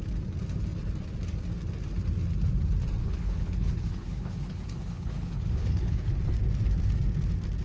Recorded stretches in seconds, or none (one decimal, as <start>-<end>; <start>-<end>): 0.0-3.0; 6.2-7.6